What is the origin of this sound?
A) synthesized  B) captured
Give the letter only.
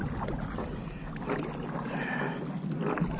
B